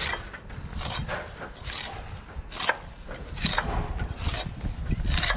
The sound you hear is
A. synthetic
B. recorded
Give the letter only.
B